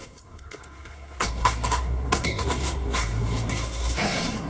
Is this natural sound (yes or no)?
no